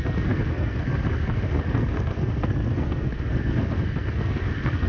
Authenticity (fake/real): fake